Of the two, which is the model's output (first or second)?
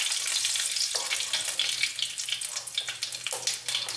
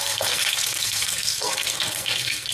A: second